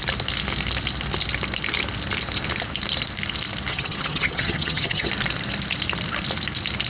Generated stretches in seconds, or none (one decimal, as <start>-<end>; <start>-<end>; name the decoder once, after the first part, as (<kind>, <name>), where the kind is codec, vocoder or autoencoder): 3.7-5.1 (vocoder, HiFi-GAN)